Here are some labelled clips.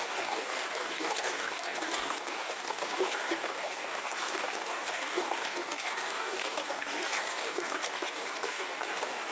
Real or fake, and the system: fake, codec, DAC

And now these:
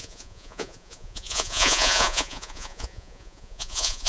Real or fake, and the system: fake, vocoder, Vocos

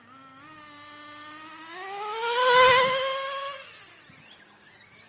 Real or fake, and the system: real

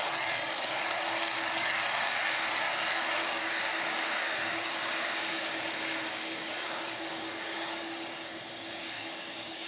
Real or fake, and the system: fake, codec, DAC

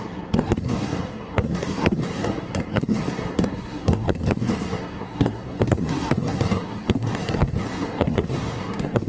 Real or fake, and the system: fake, codec, SNAC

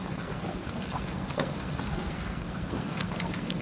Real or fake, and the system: fake, codec, SNAC